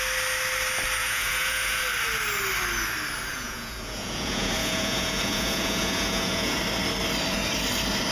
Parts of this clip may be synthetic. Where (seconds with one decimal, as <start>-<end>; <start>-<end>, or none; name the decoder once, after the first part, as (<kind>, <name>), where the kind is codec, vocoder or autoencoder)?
1.0-1.8 (vocoder, Vocos); 3.3-6.6